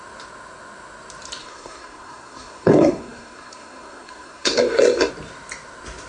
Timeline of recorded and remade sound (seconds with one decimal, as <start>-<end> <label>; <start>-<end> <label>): 0.0-1.4 recorded; 1.4-5.1 remade; 5.1-6.1 recorded